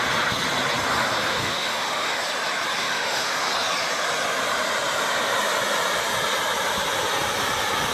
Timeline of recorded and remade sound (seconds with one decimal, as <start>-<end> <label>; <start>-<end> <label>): 0.0-1.3 recorded; 1.3-2.2 remade; 2.2-2.8 recorded; 2.8-3.5 remade; 3.5-7.9 recorded